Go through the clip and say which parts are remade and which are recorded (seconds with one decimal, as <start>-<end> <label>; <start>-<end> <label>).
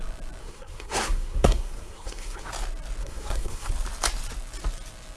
0.0-0.4 recorded; 0.4-2.5 remade; 2.5-3.0 recorded; 3.0-3.7 remade; 3.7-5.2 recorded